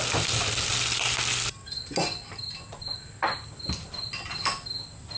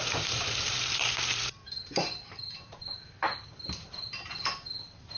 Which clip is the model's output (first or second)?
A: second